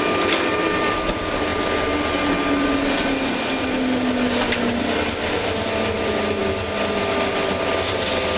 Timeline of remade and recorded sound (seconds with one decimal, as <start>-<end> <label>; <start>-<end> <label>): 0.0-8.4 recorded